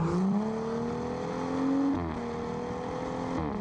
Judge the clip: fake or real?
real